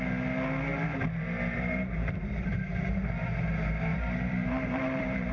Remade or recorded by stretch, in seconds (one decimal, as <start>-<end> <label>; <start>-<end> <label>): 0.0-0.7 recorded; 0.7-2.9 remade; 2.9-3.9 recorded; 3.9-5.3 remade